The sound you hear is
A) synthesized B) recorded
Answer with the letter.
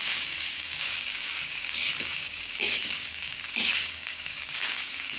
A